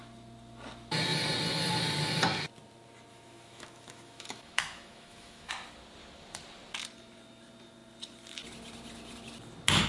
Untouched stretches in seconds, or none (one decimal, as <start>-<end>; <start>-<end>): 0.0-3.1; 5.5-9.9